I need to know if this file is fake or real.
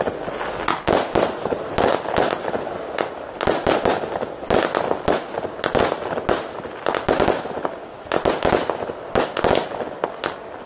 real